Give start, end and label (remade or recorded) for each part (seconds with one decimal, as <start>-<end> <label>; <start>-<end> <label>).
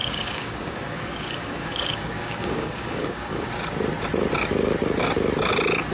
0.0-3.5 remade; 3.5-5.9 recorded